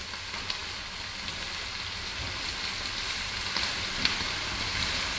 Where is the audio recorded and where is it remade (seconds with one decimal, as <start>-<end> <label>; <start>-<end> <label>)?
0.0-5.2 recorded